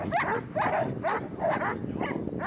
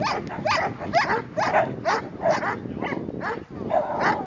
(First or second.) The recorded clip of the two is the second